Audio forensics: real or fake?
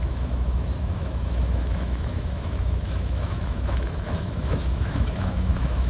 fake